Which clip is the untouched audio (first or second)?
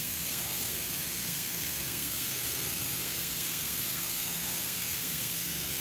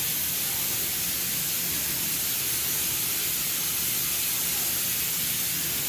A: second